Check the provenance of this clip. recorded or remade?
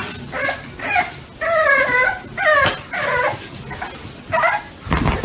recorded